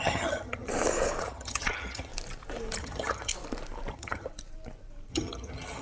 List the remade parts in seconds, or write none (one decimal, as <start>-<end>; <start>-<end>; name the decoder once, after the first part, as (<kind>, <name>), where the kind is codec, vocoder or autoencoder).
0.0-0.7 (vocoder, HiFi-GAN); 1.2-2.1; 2.8-3.3; 3.9-4.3; 5.1-5.8